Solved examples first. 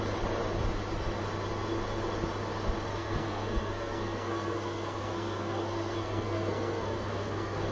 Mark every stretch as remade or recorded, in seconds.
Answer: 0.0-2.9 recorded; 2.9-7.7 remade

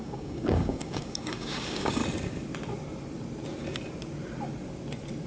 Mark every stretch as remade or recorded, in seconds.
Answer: 0.0-2.0 remade; 2.0-5.3 recorded

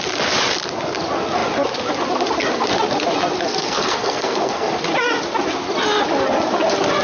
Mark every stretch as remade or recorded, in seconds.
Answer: 0.0-3.6 recorded; 3.6-4.7 remade; 4.7-7.0 recorded

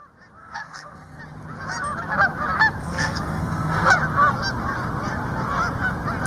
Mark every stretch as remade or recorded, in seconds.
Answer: 0.0-0.4 recorded; 0.4-1.2 remade; 1.2-2.8 recorded; 2.8-3.9 remade; 3.9-6.3 recorded

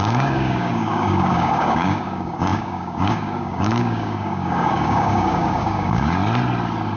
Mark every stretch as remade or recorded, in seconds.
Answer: 0.0-6.2 remade; 6.2-7.0 recorded

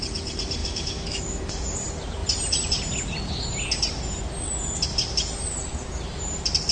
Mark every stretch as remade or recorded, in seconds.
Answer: 0.0-0.6 recorded; 0.6-1.4 remade; 1.4-6.7 recorded

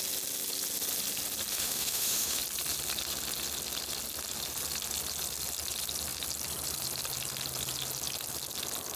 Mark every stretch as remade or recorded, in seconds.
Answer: 0.0-1.5 recorded; 1.5-2.4 remade; 2.4-9.0 recorded

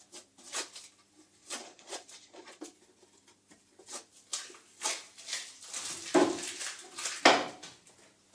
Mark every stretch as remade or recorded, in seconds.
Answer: 0.0-1.4 recorded; 1.4-2.6 remade; 2.6-8.3 recorded